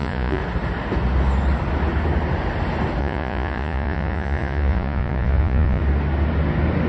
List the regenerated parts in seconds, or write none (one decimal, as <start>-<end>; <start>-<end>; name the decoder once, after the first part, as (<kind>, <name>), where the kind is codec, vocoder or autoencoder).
0.0-0.4 (vocoder, Vocos); 3.0-5.8